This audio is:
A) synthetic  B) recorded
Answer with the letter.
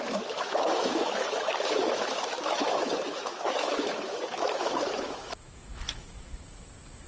A